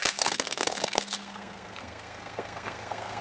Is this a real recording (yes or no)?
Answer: no